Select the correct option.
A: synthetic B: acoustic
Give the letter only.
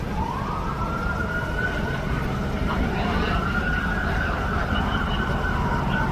A